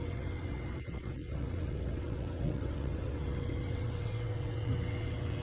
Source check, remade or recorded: remade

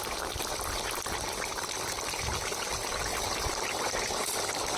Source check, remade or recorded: recorded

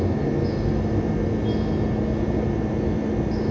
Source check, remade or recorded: recorded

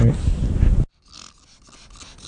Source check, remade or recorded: recorded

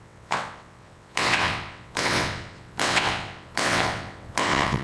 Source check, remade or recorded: remade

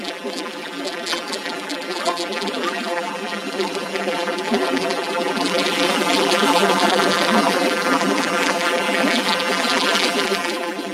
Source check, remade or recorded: remade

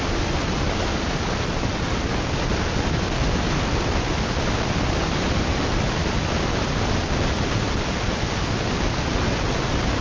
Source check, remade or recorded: recorded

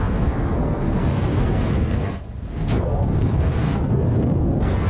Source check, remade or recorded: remade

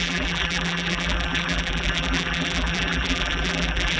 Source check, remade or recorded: remade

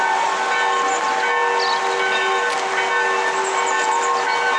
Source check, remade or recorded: recorded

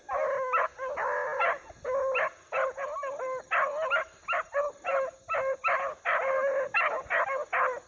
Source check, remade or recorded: recorded